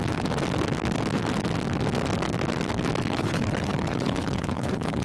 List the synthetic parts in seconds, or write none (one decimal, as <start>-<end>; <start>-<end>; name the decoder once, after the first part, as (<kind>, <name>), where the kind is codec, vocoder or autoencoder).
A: 3.0-5.0 (codec, HILCodec)